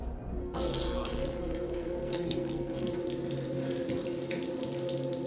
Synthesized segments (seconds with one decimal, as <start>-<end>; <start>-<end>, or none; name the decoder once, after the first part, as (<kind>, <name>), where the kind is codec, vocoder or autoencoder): 0.4-2.9 (codec, SNAC)